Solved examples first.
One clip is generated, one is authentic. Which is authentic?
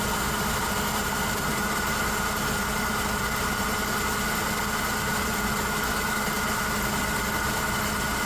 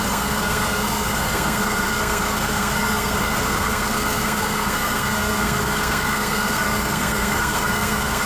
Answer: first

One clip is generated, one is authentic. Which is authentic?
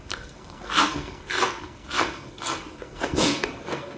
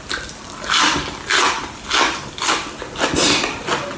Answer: second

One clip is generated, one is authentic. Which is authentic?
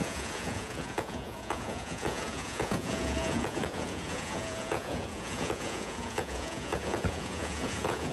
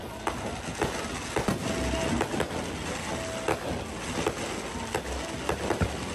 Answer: second